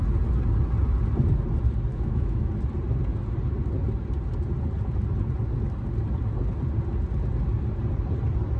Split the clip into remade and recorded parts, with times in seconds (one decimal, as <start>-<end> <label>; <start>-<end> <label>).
0.0-1.9 recorded; 1.9-2.5 remade; 2.5-8.6 recorded